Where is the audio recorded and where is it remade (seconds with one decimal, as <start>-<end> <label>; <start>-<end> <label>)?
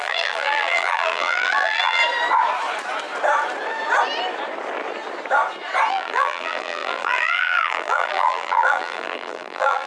0.0-2.0 remade; 2.0-5.9 recorded; 5.9-9.9 remade